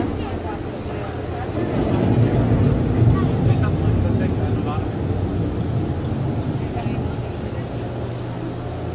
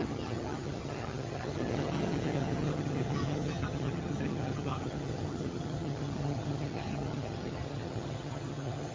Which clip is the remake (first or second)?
second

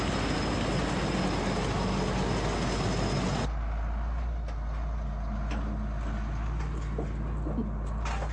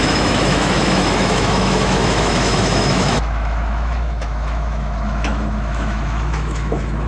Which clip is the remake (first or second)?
second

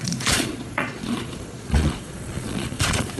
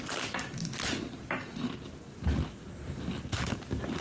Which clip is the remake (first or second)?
first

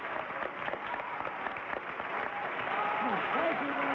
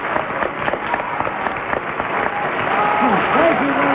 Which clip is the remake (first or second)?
first